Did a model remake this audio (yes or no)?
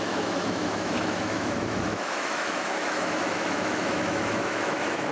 yes